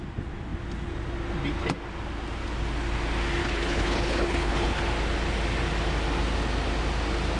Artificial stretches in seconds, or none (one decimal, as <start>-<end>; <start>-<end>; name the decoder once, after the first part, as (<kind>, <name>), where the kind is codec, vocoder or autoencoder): 3.4-4.8 (codec, HILCodec)